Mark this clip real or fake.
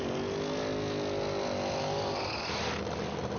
real